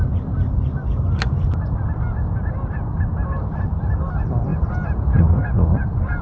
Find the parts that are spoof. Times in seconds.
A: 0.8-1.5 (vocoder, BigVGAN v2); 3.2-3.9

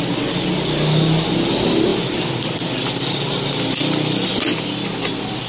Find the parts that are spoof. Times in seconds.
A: 1.9-3.5 (vocoder, BigVGAN v2)